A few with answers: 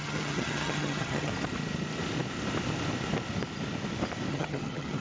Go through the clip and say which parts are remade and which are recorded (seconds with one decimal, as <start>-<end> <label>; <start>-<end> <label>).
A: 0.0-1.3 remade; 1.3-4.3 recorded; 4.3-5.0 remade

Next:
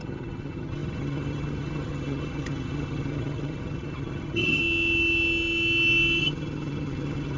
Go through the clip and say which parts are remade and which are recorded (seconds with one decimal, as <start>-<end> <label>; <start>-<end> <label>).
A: 0.0-4.6 remade; 4.6-6.2 recorded; 6.2-7.4 remade

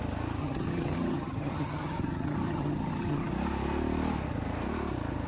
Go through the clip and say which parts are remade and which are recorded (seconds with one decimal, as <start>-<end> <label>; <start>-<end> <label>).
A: 0.0-0.4 recorded; 0.4-3.3 remade; 3.3-5.3 recorded